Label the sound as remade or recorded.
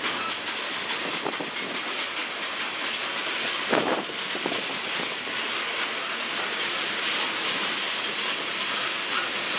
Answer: recorded